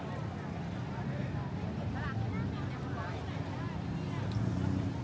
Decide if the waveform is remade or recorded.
recorded